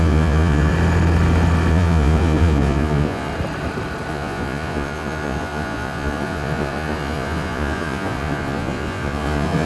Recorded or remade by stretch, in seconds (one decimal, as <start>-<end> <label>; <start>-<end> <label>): 0.0-0.7 remade; 0.7-1.7 recorded; 1.7-3.3 remade; 3.3-4.1 recorded; 4.1-9.7 remade